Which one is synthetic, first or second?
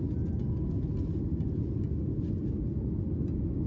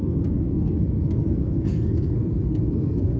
second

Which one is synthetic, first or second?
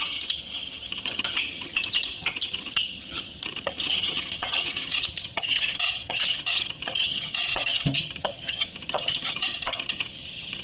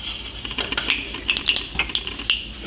first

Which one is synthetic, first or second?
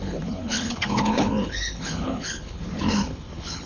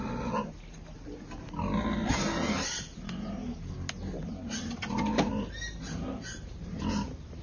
first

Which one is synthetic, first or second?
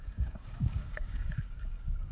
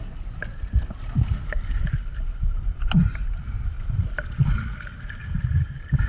first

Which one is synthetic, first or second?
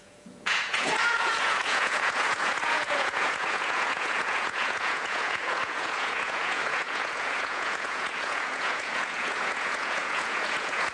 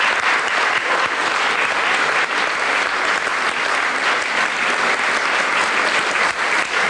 first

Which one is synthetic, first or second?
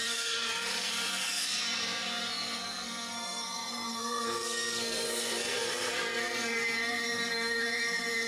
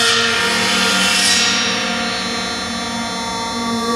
first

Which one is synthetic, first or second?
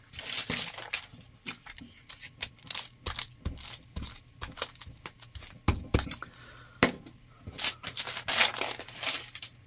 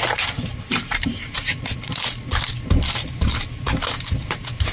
second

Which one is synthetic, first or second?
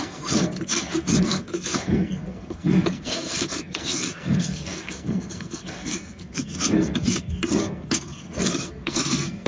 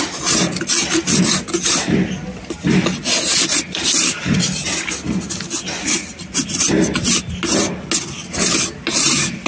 first